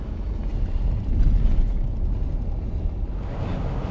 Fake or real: real